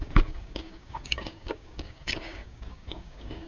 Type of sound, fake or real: fake